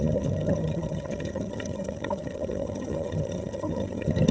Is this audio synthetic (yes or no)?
yes